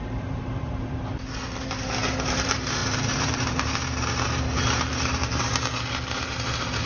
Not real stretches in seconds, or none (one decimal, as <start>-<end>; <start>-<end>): 0.0-6.8